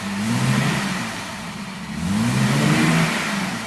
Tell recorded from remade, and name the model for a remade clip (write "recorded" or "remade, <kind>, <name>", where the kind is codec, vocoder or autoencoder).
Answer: recorded